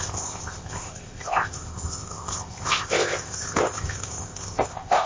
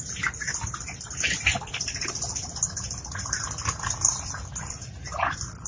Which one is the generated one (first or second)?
first